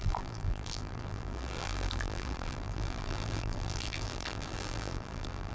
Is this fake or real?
fake